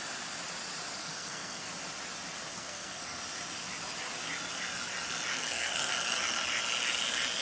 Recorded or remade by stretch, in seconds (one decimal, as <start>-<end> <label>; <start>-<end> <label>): 0.0-1.0 recorded; 1.0-1.7 remade; 1.7-2.5 recorded; 2.5-3.2 remade; 3.2-5.3 recorded; 5.3-5.9 remade; 5.9-7.4 recorded

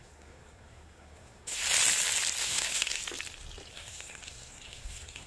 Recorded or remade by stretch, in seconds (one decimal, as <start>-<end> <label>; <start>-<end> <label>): 0.0-1.6 remade; 1.6-2.4 recorded; 2.4-3.0 remade; 3.0-3.7 recorded; 3.7-5.3 remade

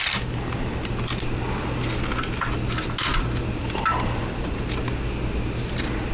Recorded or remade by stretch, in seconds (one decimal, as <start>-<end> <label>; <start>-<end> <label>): 0.0-3.1 recorded; 3.1-4.8 remade; 4.8-6.1 recorded

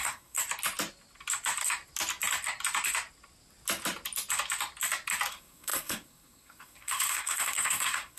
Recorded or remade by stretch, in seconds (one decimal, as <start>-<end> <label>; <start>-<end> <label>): 0.0-0.4 remade; 0.4-5.3 recorded; 5.3-8.2 remade

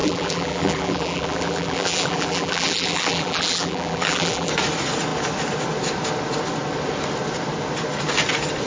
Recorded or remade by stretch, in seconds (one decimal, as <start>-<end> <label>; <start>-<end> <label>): 0.0-4.5 remade; 4.5-8.7 recorded

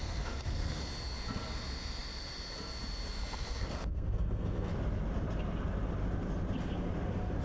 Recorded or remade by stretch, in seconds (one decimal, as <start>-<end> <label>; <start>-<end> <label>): 0.0-0.8 remade; 0.8-3.6 recorded; 3.6-4.7 remade; 4.7-7.4 recorded

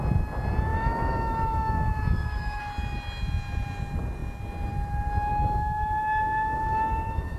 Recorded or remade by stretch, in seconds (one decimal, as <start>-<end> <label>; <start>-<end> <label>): 0.0-0.7 recorded; 0.7-2.6 remade; 2.6-5.3 recorded; 5.3-7.4 remade